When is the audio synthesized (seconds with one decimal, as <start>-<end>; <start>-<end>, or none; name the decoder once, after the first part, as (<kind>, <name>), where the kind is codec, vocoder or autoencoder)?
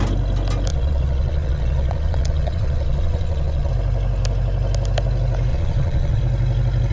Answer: 0.7-3.7 (vocoder, Vocos); 5.5-6.2